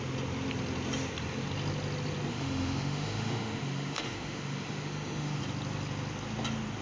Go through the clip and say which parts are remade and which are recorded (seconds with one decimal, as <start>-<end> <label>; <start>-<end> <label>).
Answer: 0.0-2.3 recorded; 2.3-5.4 remade; 5.4-6.8 recorded